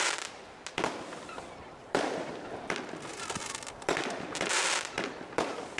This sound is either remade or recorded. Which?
recorded